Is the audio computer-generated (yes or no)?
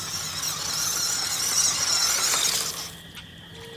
no